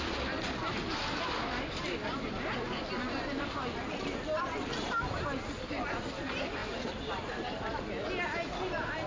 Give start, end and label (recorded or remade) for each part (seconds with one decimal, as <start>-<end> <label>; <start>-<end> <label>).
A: 0.0-9.1 recorded